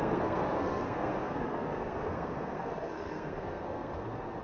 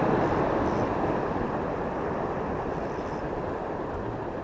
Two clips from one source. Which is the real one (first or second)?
second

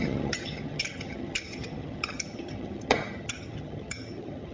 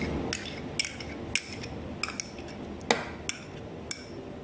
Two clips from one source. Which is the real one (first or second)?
second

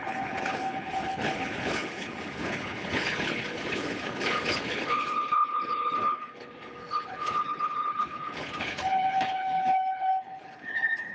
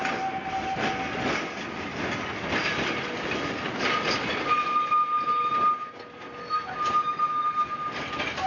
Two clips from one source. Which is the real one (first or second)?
second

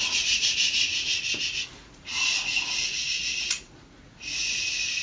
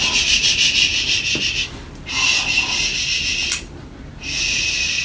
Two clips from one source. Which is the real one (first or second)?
second